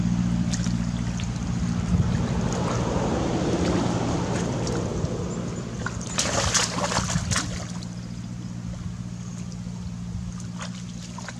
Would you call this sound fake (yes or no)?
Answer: no